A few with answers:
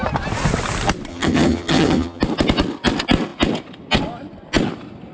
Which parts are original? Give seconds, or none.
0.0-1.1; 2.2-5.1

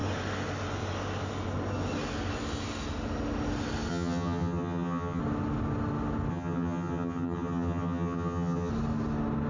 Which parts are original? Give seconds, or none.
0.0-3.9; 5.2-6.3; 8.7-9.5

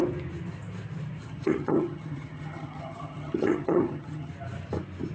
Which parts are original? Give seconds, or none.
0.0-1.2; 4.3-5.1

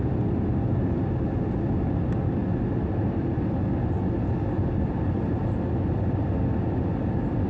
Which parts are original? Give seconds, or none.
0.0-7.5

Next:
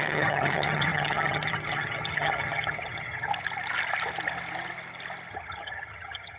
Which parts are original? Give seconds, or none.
3.3-5.3